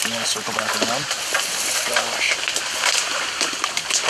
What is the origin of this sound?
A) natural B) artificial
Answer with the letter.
A